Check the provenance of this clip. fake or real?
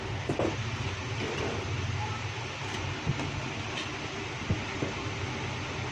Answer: real